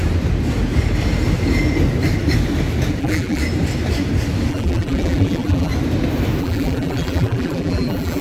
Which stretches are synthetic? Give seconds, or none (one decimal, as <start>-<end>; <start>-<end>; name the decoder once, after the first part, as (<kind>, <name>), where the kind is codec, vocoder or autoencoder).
3.0-3.4 (vocoder, BigVGAN v2); 4.5-5.7; 6.4-8.2